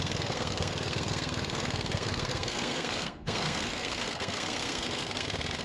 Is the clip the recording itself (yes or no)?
no